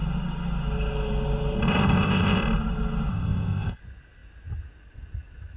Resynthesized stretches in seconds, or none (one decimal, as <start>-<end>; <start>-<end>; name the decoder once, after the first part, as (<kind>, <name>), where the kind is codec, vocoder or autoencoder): 1.7-2.4 (codec, ZipCodec); 3.1-3.8